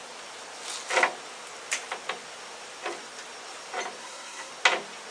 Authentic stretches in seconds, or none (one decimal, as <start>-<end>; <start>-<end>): 0.0-4.0; 4.5-5.1